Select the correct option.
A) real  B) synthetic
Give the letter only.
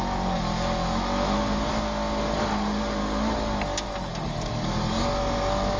A